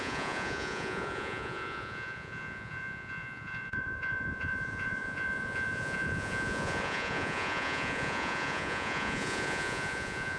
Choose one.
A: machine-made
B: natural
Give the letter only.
A